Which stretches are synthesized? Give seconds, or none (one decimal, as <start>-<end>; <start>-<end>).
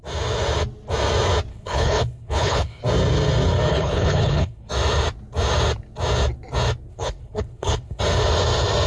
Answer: 1.5-2.8; 3.7-4.7; 6.9-8.0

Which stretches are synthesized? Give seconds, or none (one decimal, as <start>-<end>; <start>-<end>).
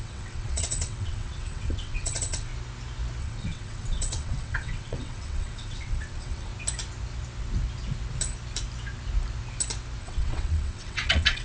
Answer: 0.0-2.5; 3.2-6.5; 10.0-11.4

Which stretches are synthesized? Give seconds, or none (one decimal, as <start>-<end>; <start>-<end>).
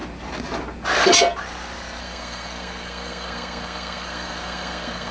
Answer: 2.0-5.1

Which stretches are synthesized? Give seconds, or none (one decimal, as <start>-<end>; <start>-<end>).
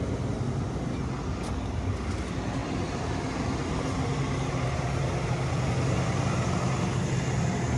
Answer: none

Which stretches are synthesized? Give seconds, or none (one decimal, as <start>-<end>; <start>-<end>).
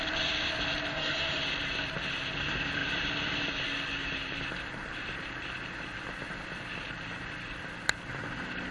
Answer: 0.9-1.4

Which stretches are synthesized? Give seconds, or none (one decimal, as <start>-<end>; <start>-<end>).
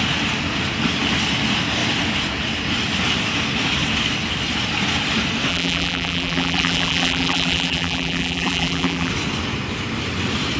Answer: 5.5-9.1